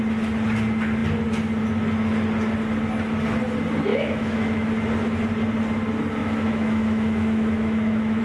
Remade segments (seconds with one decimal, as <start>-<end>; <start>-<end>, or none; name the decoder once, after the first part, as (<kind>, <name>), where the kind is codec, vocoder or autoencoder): 3.9-4.7 (autoencoder, DAC-VAE); 6.2-8.2